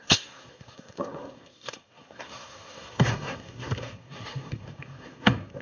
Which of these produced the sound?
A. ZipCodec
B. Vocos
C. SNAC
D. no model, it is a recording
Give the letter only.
C